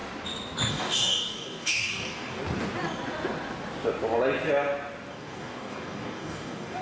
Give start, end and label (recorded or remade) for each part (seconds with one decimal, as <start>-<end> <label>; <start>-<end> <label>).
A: 0.0-0.7 recorded; 0.7-2.4 remade; 2.4-5.1 recorded; 5.1-6.8 remade